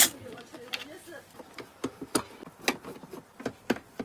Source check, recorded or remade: recorded